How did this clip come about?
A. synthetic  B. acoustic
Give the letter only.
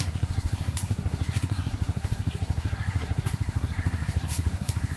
A